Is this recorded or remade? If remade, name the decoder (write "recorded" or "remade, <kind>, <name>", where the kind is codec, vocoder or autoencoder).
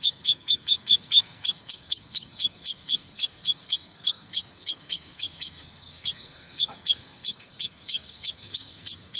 remade, codec, SNAC